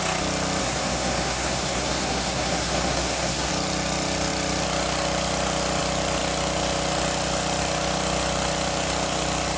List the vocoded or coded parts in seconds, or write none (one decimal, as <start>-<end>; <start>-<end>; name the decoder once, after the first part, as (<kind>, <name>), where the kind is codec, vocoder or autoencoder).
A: 0.6-3.5 (codec, SNAC)